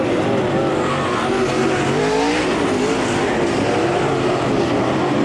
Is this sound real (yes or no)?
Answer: yes